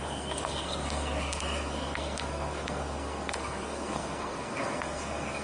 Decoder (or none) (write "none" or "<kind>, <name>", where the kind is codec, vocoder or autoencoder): codec, SNAC